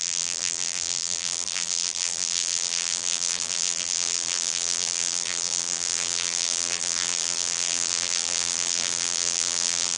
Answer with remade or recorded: remade